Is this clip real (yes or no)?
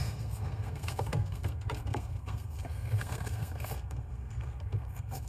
no